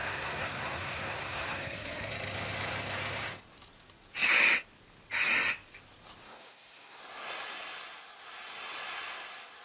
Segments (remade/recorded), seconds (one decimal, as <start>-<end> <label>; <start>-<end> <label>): 0.0-2.1 remade; 2.1-6.2 recorded; 6.2-7.0 remade; 7.0-9.6 recorded